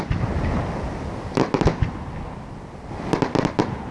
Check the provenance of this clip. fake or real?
real